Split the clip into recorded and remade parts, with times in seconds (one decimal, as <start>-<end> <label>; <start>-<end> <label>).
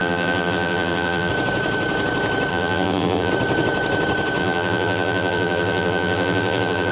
0.0-1.3 remade; 1.3-2.5 recorded; 2.5-3.3 remade; 3.3-4.4 recorded; 4.4-6.9 remade